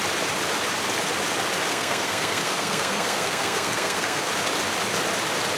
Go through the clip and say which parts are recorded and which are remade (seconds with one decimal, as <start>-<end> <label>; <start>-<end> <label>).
0.0-1.7 recorded; 1.7-4.3 remade; 4.3-5.6 recorded